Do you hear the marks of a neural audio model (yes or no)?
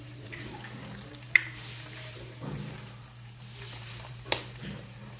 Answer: yes